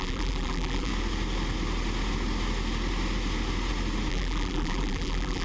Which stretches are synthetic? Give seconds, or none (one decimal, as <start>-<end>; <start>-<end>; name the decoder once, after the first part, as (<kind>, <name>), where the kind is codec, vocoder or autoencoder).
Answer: 0.0-0.9 (vocoder, BigVGAN v2); 4.1-5.4